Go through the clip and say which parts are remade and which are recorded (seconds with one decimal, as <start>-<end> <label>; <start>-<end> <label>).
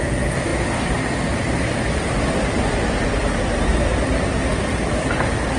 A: 0.0-5.6 recorded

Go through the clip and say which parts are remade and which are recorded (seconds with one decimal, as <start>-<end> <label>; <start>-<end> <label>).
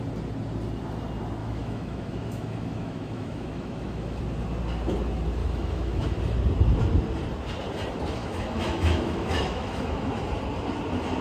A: 0.0-1.4 recorded; 1.4-4.2 remade; 4.2-5.4 recorded; 5.4-6.2 remade; 6.2-8.2 recorded; 8.2-10.2 remade; 10.2-11.2 recorded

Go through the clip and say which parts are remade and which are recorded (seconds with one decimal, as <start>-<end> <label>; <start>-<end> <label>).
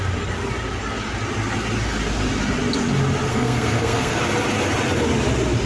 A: 0.0-3.3 recorded; 3.3-4.2 remade; 4.2-5.7 recorded